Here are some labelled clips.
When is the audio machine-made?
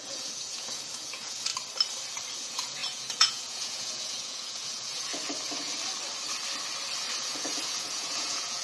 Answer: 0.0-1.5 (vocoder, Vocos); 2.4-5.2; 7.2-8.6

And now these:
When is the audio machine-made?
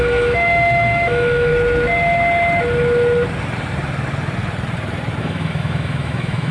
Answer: 0.0-1.5 (autoencoder, DAC-VAE); 5.2-6.5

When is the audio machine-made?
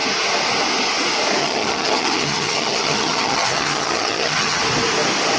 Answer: 1.4-4.6 (vocoder, HiFi-GAN)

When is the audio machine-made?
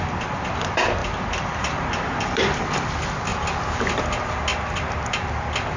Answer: 1.0-2.6 (vocoder, BigVGAN v2)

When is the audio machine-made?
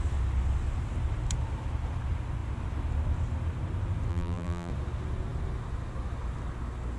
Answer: 4.1-4.7 (vocoder, BigVGAN v2)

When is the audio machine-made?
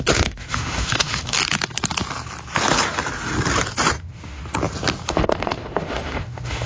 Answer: 0.0-1.4 (autoencoder, DAC-VAE); 4.0-4.4; 5.1-6.7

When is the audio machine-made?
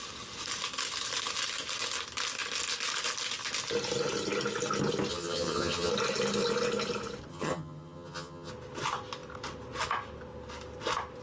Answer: 5.1-5.9 (vocoder, HiFi-GAN); 7.3-8.5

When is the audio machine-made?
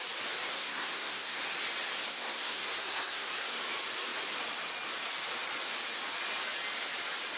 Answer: 0.5-1.4 (codec, SNAC); 2.1-3.6